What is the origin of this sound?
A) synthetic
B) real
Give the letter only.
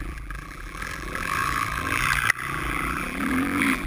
A